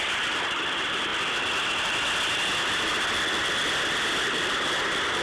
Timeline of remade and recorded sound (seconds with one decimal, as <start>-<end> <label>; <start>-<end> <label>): 0.0-1.1 remade; 1.1-4.2 recorded; 4.2-5.2 remade